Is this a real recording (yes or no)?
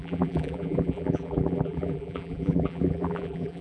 no